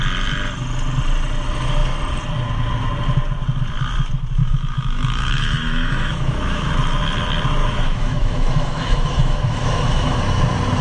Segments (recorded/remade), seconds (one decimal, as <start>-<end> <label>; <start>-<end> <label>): 0.0-4.4 recorded; 4.4-6.7 remade; 6.7-7.6 recorded; 7.6-10.2 remade; 10.2-10.8 recorded